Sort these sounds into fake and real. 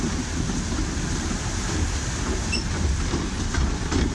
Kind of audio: real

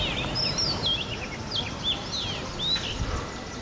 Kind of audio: real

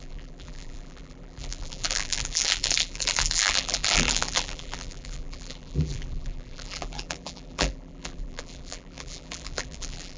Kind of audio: fake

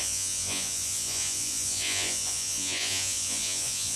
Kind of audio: fake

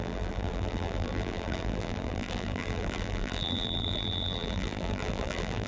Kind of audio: fake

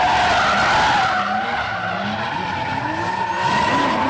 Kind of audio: real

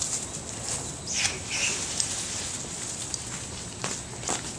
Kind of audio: real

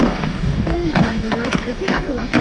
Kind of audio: fake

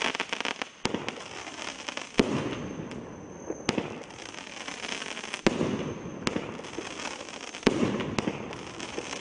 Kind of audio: real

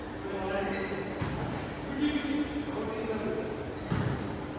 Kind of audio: real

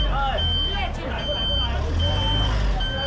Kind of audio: real